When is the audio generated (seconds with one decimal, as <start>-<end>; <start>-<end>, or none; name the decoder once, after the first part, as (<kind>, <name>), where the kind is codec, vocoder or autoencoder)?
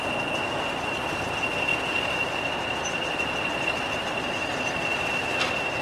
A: none